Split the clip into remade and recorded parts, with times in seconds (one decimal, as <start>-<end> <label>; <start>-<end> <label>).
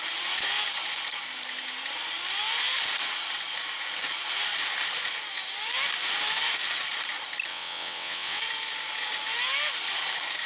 0.0-7.5 recorded; 7.5-8.4 remade; 8.4-10.5 recorded